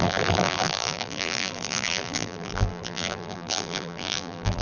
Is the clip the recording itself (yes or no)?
no